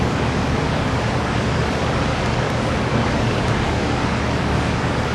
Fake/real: fake